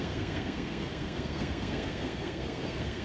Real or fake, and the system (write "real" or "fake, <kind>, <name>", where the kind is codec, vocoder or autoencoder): fake, codec, SNAC